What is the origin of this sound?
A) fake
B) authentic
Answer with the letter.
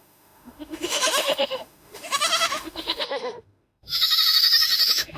A